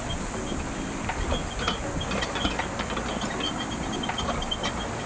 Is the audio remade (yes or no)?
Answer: no